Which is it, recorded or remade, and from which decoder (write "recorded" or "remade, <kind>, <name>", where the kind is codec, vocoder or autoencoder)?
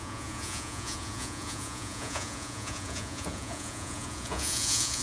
remade, vocoder, Vocos